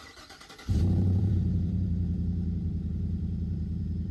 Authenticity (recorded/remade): remade